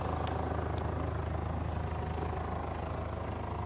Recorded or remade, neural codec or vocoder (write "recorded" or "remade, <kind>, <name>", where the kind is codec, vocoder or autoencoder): remade, vocoder, BigVGAN v2